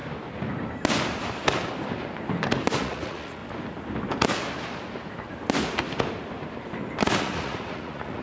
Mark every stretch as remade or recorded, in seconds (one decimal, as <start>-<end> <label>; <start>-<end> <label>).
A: 0.0-2.8 recorded; 2.8-3.4 remade; 3.4-7.2 recorded; 7.2-8.2 remade